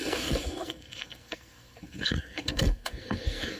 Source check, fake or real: fake